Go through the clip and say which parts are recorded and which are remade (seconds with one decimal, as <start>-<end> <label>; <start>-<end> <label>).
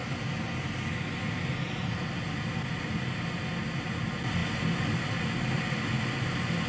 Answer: 0.0-6.7 recorded